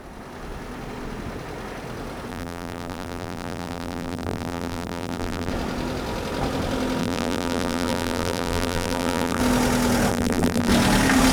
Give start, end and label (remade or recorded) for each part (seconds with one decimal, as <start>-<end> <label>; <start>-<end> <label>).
0.0-2.3 recorded; 2.3-5.5 remade; 5.5-7.0 recorded; 7.0-9.4 remade; 9.4-10.1 recorded; 10.1-10.7 remade; 10.7-11.3 recorded

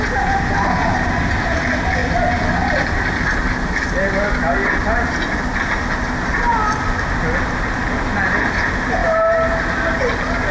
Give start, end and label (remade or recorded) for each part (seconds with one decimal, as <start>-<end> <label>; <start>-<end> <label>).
0.0-10.5 recorded

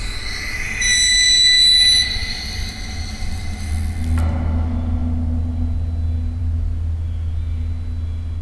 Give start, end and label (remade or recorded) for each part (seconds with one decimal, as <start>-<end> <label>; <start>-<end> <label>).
0.0-2.2 recorded; 2.2-3.7 remade; 3.7-8.4 recorded